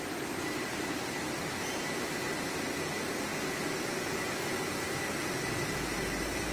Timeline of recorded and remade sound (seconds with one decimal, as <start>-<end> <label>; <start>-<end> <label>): 0.0-6.5 recorded